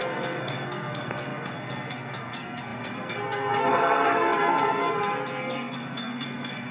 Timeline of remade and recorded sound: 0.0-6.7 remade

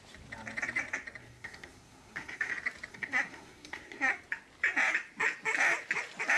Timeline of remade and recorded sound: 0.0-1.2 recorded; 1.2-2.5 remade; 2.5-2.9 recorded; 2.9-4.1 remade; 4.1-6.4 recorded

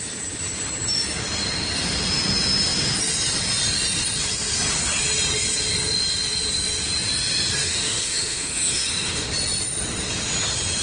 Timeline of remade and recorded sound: 0.0-7.6 recorded; 7.6-9.3 remade; 9.3-10.8 recorded